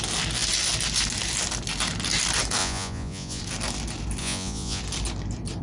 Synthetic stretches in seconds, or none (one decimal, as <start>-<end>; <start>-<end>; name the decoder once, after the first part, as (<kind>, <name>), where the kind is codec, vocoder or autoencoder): 2.6-3.4 (vocoder, Vocos); 4.2-4.8